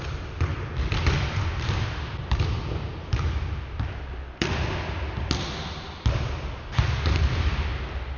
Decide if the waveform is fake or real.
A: real